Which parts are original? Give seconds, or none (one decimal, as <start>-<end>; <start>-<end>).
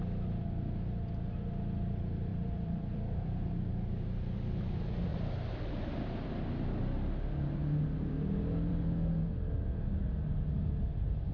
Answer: 0.0-2.3; 3.9-5.1; 6.8-11.3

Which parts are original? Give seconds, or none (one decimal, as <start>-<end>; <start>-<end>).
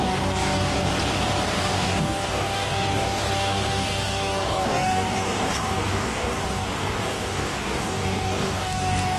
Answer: 0.9-1.4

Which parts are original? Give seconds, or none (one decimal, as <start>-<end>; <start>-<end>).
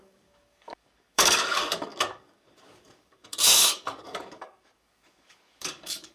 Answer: none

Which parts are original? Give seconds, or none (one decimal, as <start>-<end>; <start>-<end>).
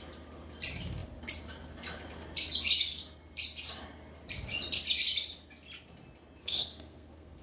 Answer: 0.0-6.4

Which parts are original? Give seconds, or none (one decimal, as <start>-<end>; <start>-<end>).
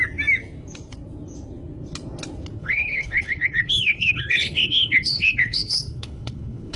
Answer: 0.0-2.6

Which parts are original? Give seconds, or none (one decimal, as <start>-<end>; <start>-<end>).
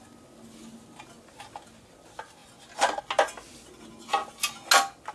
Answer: 0.0-5.1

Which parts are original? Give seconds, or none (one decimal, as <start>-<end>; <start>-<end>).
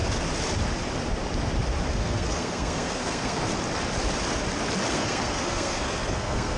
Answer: 0.0-1.9; 3.5-4.9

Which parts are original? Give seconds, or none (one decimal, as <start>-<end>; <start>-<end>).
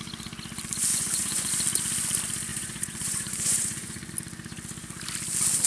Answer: 0.0-0.9; 1.5-2.5; 4.1-5.7